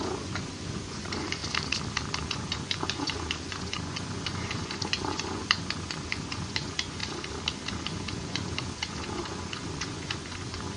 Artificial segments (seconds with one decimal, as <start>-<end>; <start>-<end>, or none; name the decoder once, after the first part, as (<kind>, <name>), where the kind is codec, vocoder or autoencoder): 0.0-1.4 (vocoder, Vocos); 2.3-7.0; 7.7-10.8